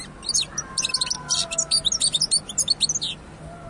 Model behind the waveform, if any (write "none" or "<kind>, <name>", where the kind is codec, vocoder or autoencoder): none